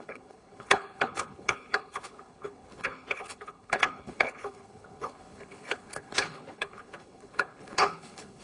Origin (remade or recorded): remade